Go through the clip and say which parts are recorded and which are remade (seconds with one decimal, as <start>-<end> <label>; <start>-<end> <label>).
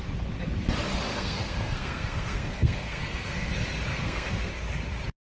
0.0-1.1 recorded; 1.1-3.5 remade; 3.5-3.9 recorded; 3.9-4.5 remade; 4.5-5.2 recorded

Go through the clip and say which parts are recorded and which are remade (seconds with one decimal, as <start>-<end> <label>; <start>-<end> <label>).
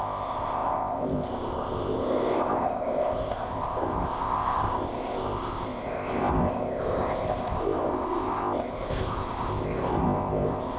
0.0-10.8 remade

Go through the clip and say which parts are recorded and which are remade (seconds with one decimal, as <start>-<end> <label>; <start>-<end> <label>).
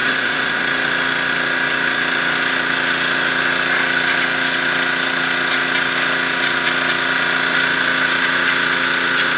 0.0-0.6 remade; 0.6-9.4 recorded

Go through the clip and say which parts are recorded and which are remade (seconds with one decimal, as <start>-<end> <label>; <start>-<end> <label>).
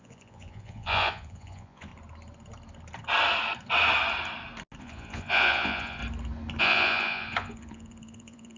0.0-1.9 remade; 1.9-4.8 recorded; 4.8-6.0 remade; 6.0-6.6 recorded; 6.6-8.6 remade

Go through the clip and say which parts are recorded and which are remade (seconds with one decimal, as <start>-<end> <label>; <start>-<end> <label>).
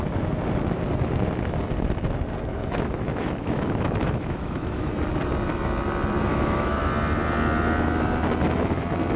0.0-2.5 recorded; 2.5-4.9 remade; 4.9-6.3 recorded; 6.3-6.9 remade; 6.9-9.2 recorded